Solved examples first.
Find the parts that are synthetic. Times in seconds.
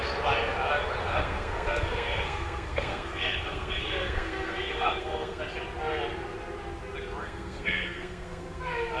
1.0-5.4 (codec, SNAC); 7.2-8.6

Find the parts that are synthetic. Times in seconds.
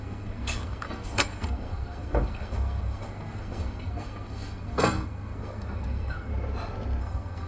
0.0-6.3 (codec, SNAC); 7.0-7.5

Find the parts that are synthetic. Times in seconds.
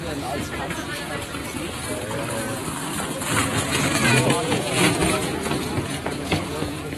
0.0-1.4 (vocoder, Vocos); 3.5-7.0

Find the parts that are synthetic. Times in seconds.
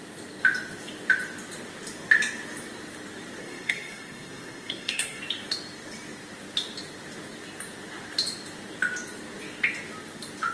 3.4-5.2 (codec, SNAC)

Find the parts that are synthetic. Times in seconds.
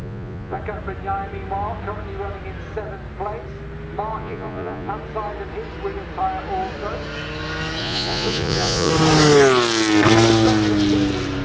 0.0-0.6 (vocoder, Vocos); 4.2-4.9; 7.8-8.9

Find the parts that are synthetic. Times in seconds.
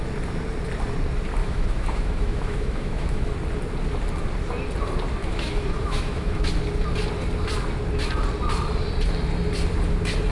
1.4-3.3 (autoencoder, DAC-VAE); 5.2-6.5